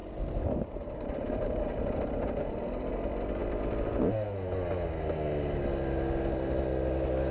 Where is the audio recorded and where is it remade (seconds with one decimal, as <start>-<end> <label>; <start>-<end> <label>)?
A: 0.0-7.3 recorded